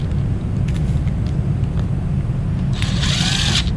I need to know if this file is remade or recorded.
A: recorded